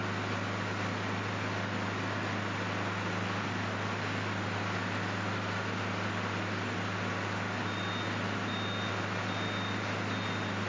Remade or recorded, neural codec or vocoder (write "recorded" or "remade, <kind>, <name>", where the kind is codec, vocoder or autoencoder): recorded